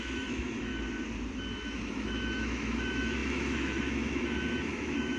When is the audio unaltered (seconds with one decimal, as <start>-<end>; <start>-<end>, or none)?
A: 0.7-1.9